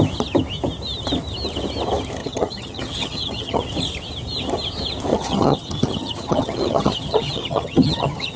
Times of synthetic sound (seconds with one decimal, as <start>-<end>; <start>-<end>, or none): 2.2-3.6; 5.1-8.4